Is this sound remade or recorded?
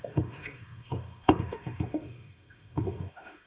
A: remade